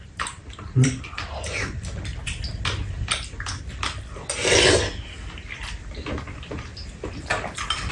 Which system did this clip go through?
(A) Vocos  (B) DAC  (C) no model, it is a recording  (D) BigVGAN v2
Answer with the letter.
C